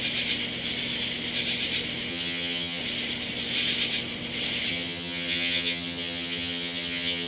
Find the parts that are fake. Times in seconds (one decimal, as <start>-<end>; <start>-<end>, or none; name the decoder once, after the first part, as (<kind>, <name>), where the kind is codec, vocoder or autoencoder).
2.1-2.8 (vocoder, HiFi-GAN); 4.7-7.3